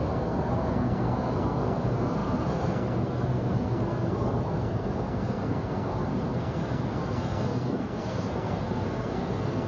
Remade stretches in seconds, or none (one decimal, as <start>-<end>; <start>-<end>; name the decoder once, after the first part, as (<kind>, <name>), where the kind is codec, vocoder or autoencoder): 0.0-9.7 (codec, SNAC)